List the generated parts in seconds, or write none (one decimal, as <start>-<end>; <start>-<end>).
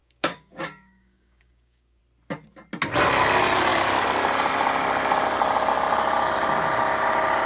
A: 0.0-2.0